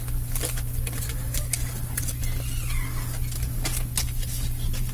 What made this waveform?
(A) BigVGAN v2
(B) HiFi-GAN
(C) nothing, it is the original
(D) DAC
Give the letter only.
C